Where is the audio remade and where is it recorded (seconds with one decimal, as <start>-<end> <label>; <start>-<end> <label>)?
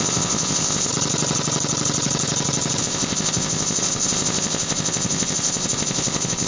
0.0-0.9 remade; 0.9-2.8 recorded; 2.8-6.5 remade